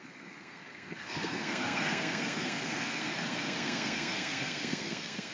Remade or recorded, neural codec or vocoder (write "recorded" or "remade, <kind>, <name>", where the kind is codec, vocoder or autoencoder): remade, codec, SNAC